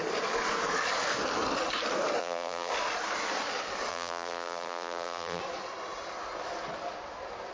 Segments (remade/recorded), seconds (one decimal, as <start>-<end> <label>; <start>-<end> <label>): 0.0-2.2 recorded; 2.2-2.7 remade; 2.7-3.9 recorded; 3.9-5.4 remade; 5.4-7.5 recorded